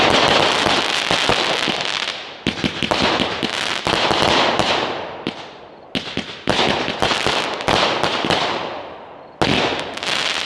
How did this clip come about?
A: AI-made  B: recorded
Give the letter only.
B